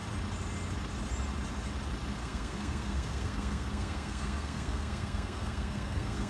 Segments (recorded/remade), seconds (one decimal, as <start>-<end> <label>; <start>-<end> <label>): 0.0-2.2 recorded; 2.2-6.3 remade